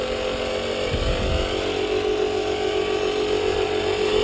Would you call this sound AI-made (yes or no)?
no